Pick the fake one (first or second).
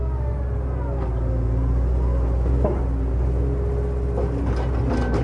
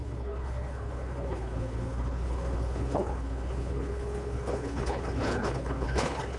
second